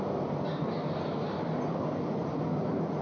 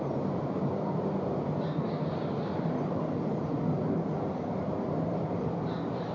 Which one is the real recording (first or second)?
first